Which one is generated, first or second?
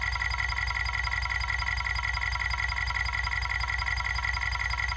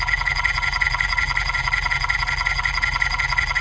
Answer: second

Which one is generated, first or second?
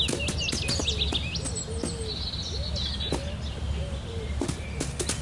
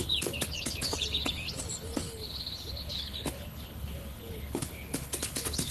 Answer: second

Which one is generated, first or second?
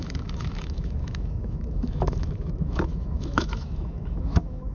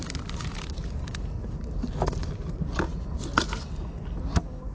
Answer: first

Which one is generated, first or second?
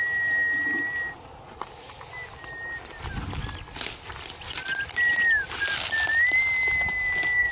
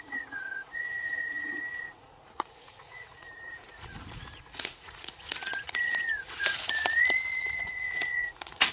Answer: second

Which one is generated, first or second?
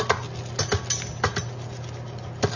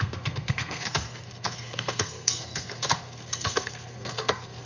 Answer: second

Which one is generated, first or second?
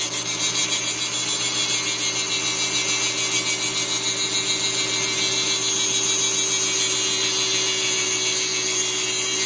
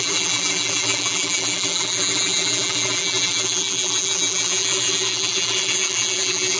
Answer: second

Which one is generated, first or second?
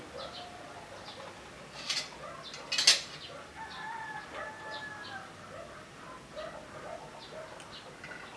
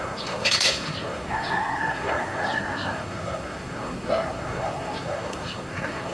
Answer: second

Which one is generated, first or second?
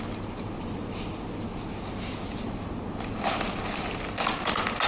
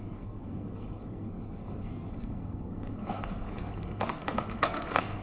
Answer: second